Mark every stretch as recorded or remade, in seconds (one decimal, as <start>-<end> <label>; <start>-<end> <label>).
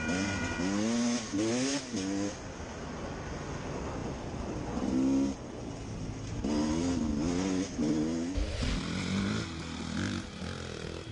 0.0-11.1 recorded